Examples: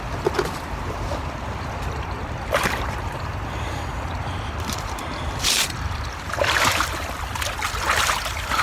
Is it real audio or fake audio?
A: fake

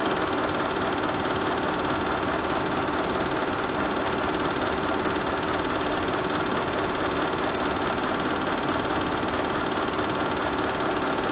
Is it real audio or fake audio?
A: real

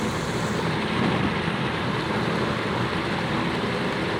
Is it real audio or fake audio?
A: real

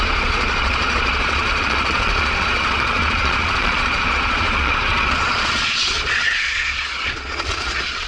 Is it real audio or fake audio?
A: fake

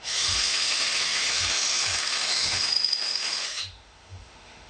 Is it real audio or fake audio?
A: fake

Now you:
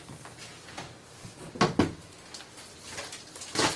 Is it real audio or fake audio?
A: real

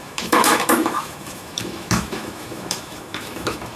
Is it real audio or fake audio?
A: fake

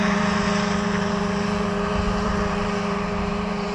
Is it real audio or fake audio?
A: fake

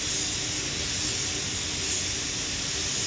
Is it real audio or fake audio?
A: real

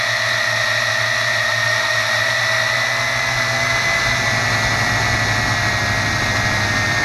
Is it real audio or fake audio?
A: real